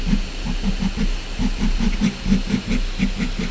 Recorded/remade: recorded